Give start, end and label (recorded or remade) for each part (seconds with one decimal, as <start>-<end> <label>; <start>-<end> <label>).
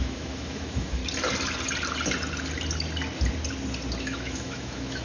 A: 0.0-1.0 remade; 1.0-4.0 recorded; 4.0-5.0 remade